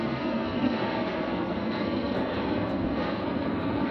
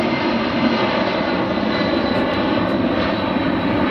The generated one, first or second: first